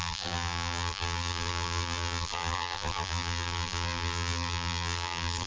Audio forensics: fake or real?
fake